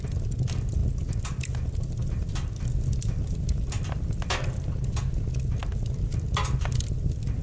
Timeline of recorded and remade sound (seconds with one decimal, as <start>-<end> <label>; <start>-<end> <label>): 0.0-7.4 recorded